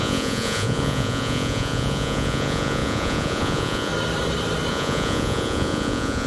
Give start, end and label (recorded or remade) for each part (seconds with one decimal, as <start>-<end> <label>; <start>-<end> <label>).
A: 0.0-3.9 remade; 3.9-4.7 recorded; 4.7-6.3 remade